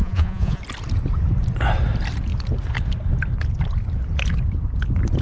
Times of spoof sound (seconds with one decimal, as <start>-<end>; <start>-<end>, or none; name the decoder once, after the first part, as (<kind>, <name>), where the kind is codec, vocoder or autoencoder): 0.0-0.6 (vocoder, Vocos)